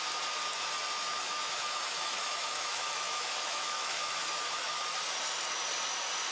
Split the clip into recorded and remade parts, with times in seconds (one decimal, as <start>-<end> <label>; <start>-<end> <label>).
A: 0.0-1.0 recorded; 1.0-4.8 remade; 4.8-6.3 recorded